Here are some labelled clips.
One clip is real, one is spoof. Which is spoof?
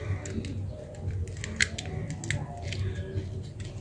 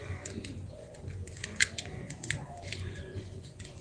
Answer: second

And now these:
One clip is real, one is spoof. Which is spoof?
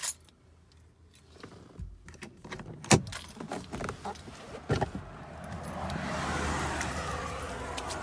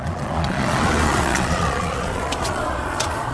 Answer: second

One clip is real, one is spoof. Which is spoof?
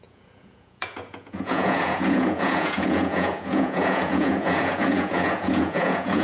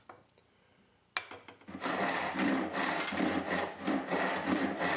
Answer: first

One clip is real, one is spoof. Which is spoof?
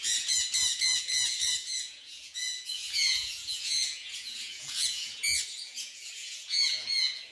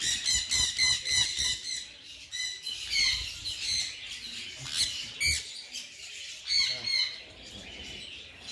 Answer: first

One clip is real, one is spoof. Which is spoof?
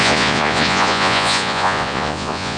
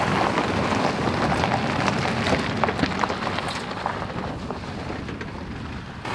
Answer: first